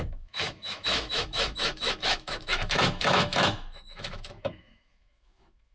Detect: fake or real fake